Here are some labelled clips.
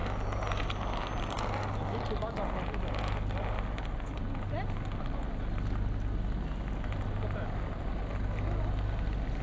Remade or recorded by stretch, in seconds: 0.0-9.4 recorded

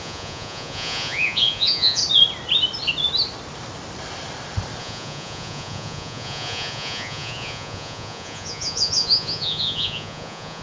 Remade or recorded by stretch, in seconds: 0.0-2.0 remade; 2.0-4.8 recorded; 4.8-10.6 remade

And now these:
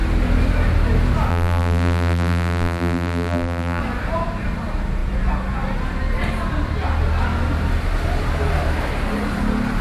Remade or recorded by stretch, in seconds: 0.0-1.3 recorded; 1.3-3.8 remade; 3.8-9.8 recorded

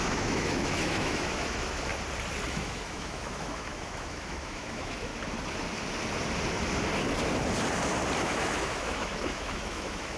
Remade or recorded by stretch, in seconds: 0.0-1.9 remade; 1.9-2.5 recorded; 2.5-5.1 remade; 5.1-8.2 recorded; 8.2-10.2 remade

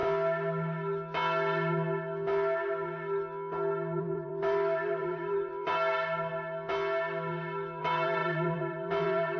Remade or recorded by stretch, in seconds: 0.0-4.0 recorded; 4.0-5.7 remade; 5.7-7.8 recorded; 7.8-9.4 remade

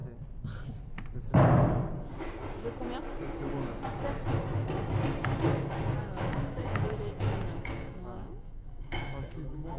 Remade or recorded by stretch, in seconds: 0.0-6.0 recorded; 6.0-9.8 remade